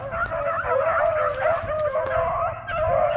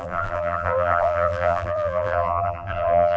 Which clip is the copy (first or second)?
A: second